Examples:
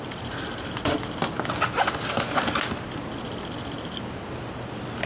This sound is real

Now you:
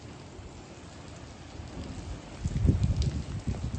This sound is real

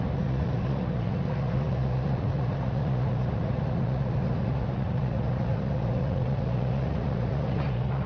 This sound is fake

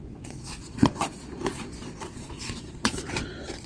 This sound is fake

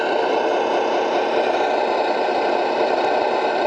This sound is real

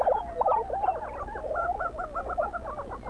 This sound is real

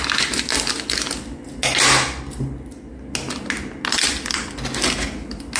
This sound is real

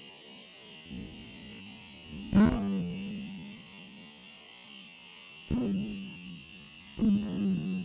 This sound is real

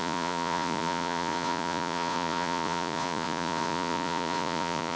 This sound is fake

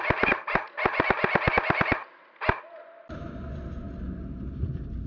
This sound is real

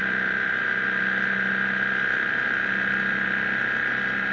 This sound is real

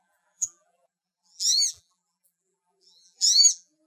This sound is fake